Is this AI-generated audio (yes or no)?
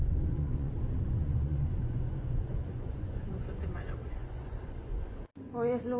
yes